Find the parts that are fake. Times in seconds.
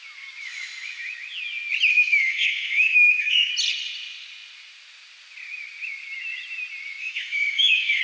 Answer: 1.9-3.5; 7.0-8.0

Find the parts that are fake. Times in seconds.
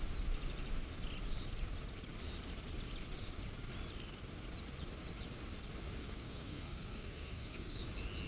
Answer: 6.0-7.8